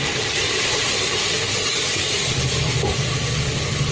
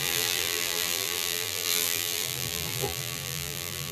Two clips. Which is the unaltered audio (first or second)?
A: first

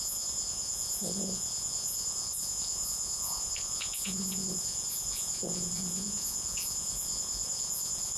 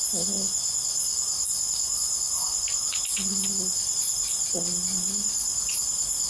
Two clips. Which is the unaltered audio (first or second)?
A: second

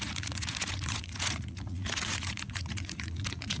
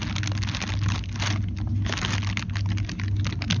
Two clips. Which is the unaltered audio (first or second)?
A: second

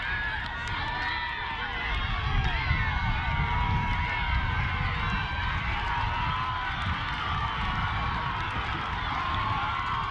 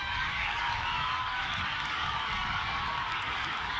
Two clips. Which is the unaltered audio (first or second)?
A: first